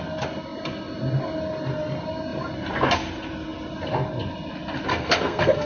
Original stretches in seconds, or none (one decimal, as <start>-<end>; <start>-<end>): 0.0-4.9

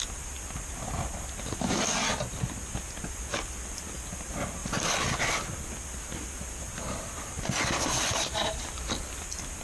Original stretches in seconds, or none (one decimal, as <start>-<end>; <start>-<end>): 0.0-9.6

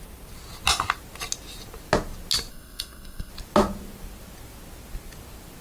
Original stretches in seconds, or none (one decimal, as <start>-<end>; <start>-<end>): 0.0-2.5; 3.3-5.6